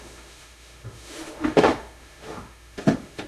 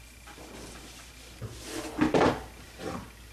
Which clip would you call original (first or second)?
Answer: second